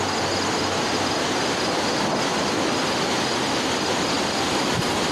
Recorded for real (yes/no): yes